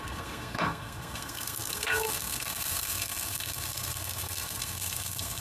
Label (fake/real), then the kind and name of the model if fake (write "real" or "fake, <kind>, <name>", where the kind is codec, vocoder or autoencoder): fake, codec, SNAC